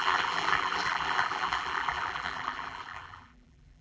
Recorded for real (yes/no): no